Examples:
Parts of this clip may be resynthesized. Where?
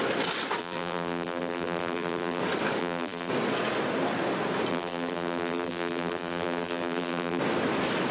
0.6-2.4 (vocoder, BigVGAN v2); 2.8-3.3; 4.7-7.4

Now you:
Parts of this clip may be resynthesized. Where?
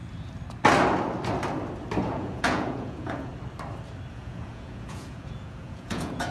2.0-3.3 (vocoder, Vocos); 4.1-6.3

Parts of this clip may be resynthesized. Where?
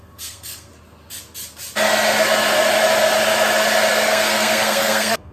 0.0-0.7 (codec, SNAC); 3.9-5.3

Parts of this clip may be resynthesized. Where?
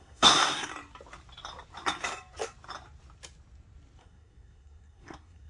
0.0-0.7 (codec, SNAC); 4.0-5.5